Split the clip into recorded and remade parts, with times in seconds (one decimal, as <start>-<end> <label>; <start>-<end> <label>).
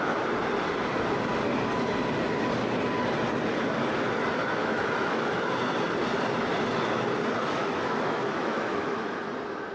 0.0-4.6 recorded; 4.6-5.5 remade; 5.5-7.6 recorded; 7.6-9.2 remade; 9.2-9.7 recorded